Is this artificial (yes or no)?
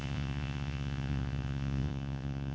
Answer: yes